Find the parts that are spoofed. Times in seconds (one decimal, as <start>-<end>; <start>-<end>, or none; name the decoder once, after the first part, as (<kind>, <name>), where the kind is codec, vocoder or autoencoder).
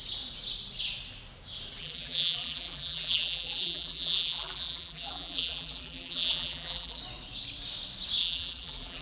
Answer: 1.8-7.0 (vocoder, BigVGAN v2); 8.2-9.0